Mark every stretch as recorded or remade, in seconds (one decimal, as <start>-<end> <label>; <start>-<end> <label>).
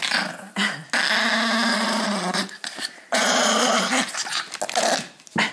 0.0-1.7 recorded; 1.7-3.9 remade; 3.9-5.5 recorded